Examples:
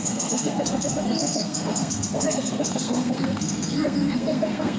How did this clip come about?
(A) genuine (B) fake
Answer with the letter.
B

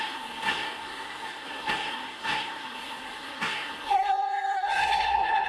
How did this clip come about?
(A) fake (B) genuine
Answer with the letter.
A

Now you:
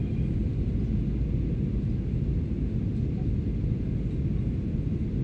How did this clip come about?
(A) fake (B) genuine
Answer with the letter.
B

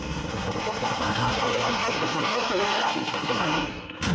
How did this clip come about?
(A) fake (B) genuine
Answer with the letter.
A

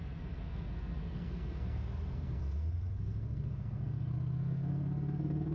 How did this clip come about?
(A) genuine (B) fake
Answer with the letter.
B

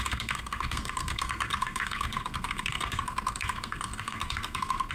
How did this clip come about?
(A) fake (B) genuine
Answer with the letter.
A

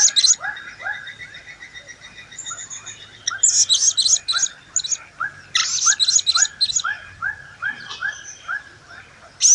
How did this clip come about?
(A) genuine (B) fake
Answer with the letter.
A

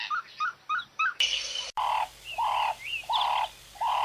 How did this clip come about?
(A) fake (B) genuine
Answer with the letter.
B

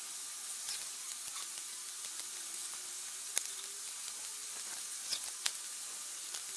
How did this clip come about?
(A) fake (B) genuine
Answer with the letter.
B